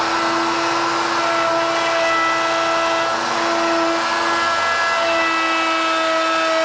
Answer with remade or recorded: recorded